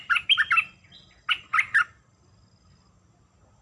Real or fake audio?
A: real